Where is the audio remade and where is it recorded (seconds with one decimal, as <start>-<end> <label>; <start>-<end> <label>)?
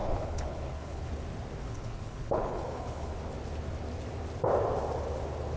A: 0.0-1.1 remade; 1.1-1.6 recorded; 1.6-3.2 remade; 3.2-5.6 recorded